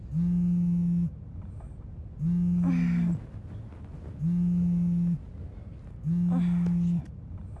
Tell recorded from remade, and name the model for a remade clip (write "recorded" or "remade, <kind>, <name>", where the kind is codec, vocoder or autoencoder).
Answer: recorded